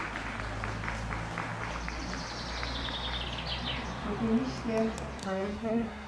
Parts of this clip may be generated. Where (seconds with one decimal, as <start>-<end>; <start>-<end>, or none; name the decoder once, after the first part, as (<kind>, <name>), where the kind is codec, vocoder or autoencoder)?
5.2-6.1 (codec, SNAC)